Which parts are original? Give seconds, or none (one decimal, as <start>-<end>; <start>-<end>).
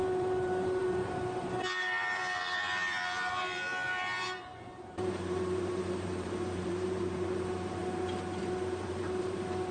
none